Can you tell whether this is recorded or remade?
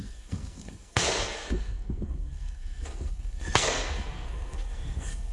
remade